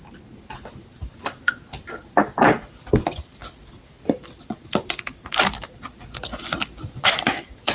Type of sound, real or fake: fake